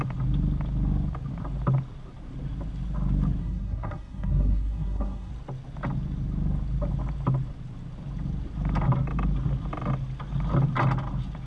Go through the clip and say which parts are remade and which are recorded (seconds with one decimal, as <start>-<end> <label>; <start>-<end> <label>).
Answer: 0.0-3.4 recorded; 3.4-5.3 remade; 5.3-11.5 recorded